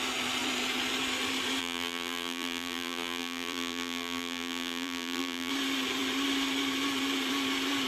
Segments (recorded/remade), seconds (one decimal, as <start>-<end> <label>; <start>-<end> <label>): 0.0-1.6 recorded; 1.6-5.5 remade; 5.5-7.9 recorded